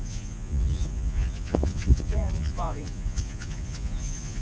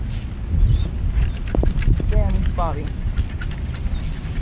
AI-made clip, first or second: first